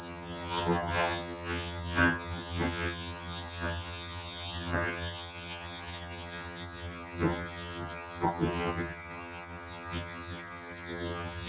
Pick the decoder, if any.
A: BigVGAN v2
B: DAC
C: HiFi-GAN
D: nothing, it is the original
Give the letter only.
C